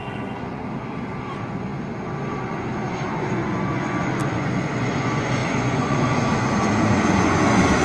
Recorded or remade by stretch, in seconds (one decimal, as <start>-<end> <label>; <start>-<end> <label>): 0.0-0.6 remade; 0.6-1.2 recorded; 1.2-1.7 remade; 1.7-2.3 recorded; 2.3-7.8 remade